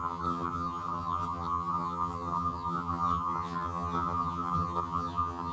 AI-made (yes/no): yes